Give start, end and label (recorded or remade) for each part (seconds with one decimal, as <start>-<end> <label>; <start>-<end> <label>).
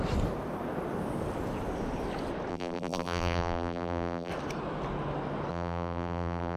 0.0-2.5 recorded; 2.5-4.3 remade; 4.3-5.5 recorded; 5.5-6.6 remade